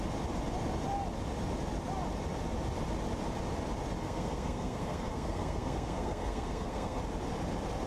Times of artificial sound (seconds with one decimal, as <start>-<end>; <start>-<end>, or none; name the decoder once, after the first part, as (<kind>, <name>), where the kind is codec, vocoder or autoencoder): 4.0-7.0 (codec, SNAC)